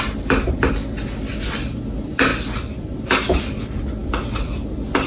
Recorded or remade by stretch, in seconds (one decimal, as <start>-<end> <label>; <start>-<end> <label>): 0.0-5.1 recorded

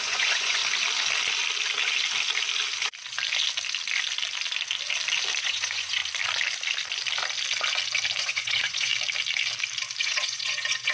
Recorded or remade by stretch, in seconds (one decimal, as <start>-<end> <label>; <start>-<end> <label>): 0.0-0.6 remade; 0.6-5.4 recorded; 5.4-6.0 remade; 6.0-8.2 recorded; 8.2-8.9 remade; 8.9-10.0 recorded; 10.0-10.9 remade

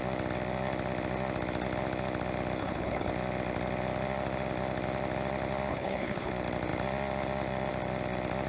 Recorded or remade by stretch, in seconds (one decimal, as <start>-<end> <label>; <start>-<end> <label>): 0.0-2.6 recorded; 2.6-3.1 remade; 3.1-5.7 recorded; 5.7-6.3 remade; 6.3-8.5 recorded

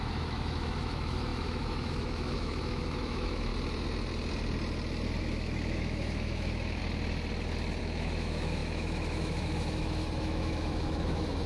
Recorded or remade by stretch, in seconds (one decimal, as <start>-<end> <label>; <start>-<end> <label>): 0.0-3.5 remade; 3.5-5.2 recorded; 5.2-6.8 remade; 6.8-7.8 recorded; 7.8-11.5 remade

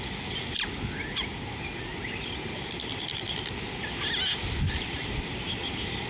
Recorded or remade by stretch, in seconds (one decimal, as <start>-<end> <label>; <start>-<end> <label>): 0.0-6.1 recorded